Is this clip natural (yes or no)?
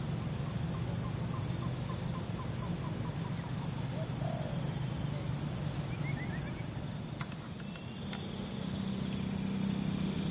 yes